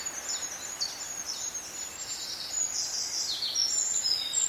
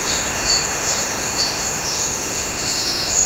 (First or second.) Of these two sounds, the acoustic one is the first